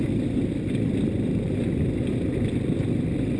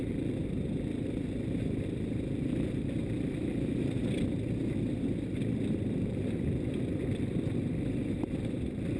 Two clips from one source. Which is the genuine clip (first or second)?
first